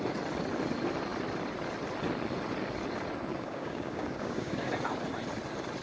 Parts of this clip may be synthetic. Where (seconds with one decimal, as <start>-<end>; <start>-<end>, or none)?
3.3-4.7